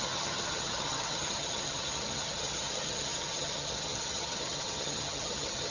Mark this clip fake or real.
fake